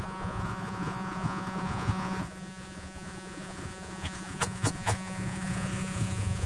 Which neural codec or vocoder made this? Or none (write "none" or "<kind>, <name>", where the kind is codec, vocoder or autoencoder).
vocoder, Vocos